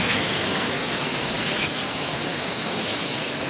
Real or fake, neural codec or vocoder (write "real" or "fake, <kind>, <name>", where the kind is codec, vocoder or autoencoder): fake, codec, SNAC